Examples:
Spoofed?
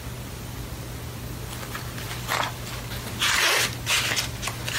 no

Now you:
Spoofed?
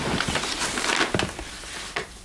no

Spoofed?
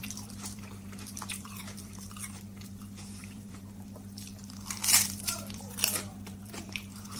yes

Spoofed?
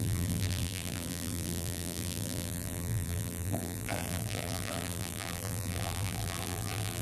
yes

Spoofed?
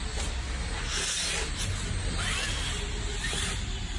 no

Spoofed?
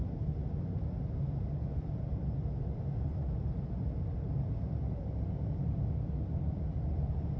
no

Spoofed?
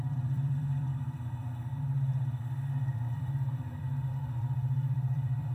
yes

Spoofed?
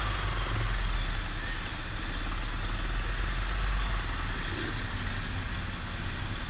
no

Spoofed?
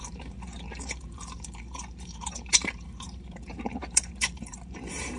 yes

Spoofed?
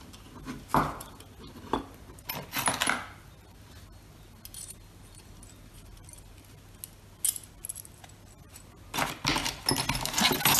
no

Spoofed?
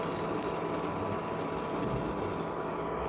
no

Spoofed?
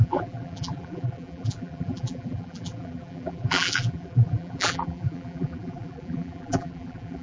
yes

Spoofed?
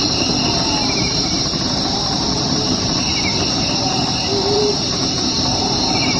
yes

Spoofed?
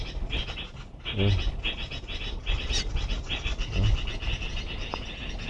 no